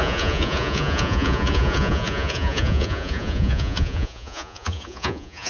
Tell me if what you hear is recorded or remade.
remade